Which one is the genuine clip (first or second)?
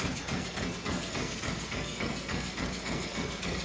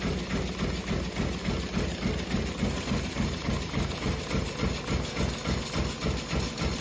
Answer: second